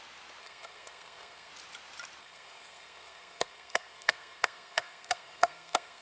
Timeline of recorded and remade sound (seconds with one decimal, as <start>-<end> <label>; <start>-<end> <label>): 0.0-0.4 recorded; 0.4-1.5 remade; 1.5-2.2 recorded; 2.2-6.0 remade